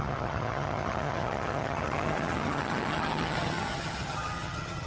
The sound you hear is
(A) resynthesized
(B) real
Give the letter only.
A